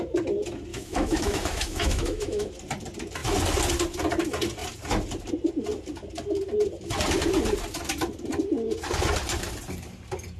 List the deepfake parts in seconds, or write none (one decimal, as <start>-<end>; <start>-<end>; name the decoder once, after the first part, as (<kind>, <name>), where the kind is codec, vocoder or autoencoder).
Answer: 0.7-2.5 (autoencoder, DAC-VAE)